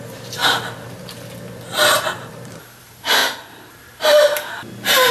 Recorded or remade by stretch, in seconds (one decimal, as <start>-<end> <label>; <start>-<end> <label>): 0.0-0.4 remade; 0.4-2.8 recorded; 2.8-5.1 remade